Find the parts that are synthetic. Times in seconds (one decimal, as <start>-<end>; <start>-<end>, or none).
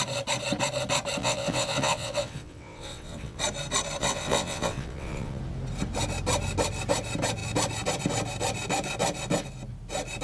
1.2-3.4; 4.0-5.4